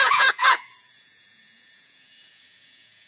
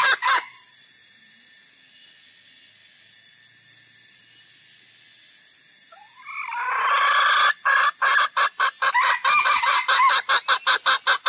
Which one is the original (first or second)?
second